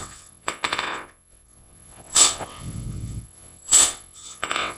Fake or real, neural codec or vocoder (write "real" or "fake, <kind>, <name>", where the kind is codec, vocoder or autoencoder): fake, vocoder, WaveNeXt